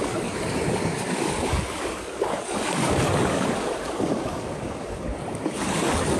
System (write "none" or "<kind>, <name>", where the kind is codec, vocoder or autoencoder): codec, DAC